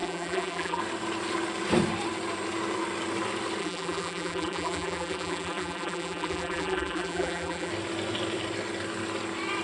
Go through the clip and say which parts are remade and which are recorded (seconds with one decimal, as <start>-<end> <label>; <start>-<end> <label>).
0.0-0.8 remade; 0.8-3.6 recorded; 3.6-7.7 remade; 7.7-9.6 recorded